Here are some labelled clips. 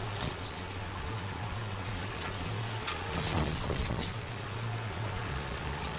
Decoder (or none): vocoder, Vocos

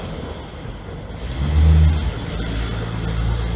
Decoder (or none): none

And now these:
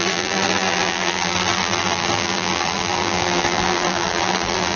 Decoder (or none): vocoder, BigVGAN v2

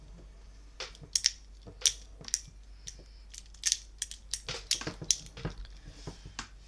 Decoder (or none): none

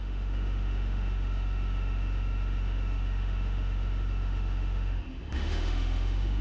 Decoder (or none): autoencoder, DAC-VAE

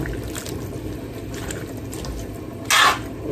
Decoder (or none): none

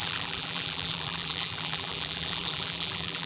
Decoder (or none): vocoder, BigVGAN v2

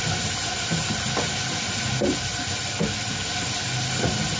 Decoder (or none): none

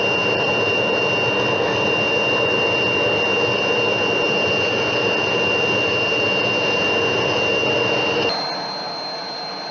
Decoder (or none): none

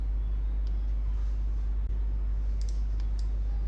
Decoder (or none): none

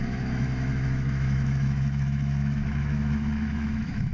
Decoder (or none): autoencoder, DAC-VAE